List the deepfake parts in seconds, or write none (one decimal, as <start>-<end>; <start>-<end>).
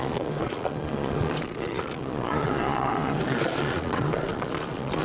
0.0-5.0